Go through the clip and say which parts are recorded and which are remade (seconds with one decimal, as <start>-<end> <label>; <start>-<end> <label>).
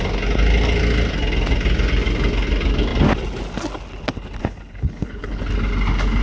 0.0-4.4 recorded; 4.4-5.4 remade; 5.4-6.2 recorded